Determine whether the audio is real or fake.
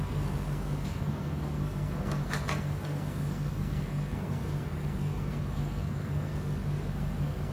fake